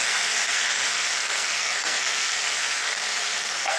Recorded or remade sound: remade